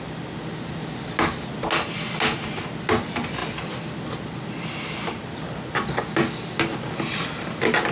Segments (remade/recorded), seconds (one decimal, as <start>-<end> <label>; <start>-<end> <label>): 0.0-7.9 recorded